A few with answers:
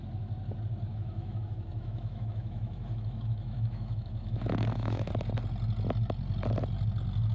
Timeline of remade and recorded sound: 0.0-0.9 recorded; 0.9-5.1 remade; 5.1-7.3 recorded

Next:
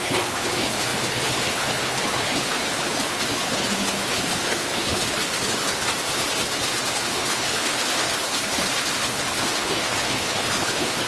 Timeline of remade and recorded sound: 0.0-5.9 remade; 5.9-6.9 recorded; 6.9-11.1 remade

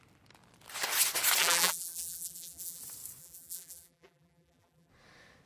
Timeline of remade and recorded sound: 0.0-1.4 recorded; 1.4-2.8 remade; 2.8-3.2 recorded; 3.2-4.9 remade; 4.9-5.5 recorded

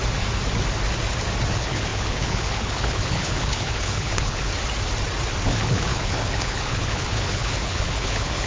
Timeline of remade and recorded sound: 0.0-1.5 recorded; 1.5-4.5 remade; 4.5-5.5 recorded; 5.5-8.5 remade

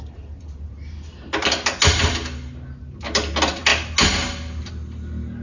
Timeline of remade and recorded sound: 0.0-5.4 recorded

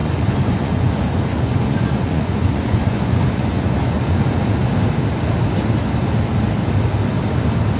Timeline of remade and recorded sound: 0.0-4.7 remade; 4.7-7.8 recorded

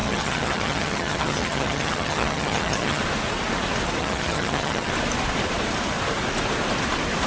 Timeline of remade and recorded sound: 0.0-3.0 remade; 3.0-4.0 recorded; 4.0-4.9 remade; 4.9-7.3 recorded